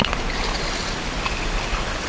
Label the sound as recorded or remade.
remade